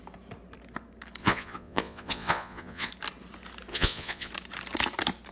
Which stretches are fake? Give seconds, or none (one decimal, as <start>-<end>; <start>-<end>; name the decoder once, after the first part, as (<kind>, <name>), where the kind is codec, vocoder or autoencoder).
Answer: 1.2-2.9 (vocoder, Vocos); 3.7-4.3